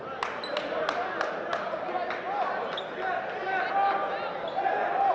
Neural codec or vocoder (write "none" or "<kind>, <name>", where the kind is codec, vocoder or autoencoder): none